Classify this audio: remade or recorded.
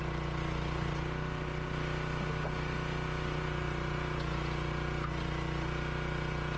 recorded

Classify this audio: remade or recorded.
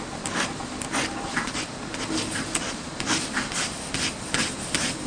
recorded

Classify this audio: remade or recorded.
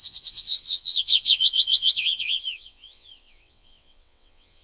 remade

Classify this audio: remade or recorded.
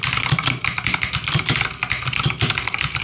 recorded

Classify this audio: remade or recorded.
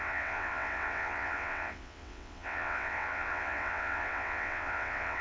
remade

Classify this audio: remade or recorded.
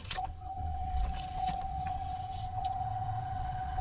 remade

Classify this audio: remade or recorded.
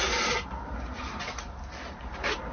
recorded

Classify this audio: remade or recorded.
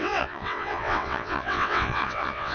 remade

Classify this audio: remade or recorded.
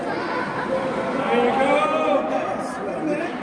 recorded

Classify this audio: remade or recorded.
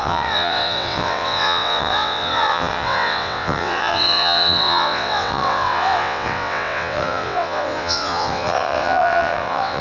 remade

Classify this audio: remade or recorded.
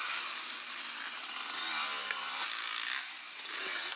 recorded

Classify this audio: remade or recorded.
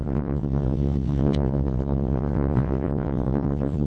remade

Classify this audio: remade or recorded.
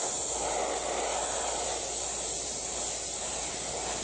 recorded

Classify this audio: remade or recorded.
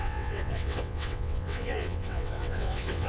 remade